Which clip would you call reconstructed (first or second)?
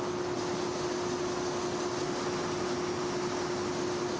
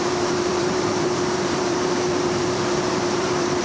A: second